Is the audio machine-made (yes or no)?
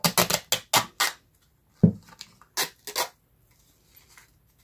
no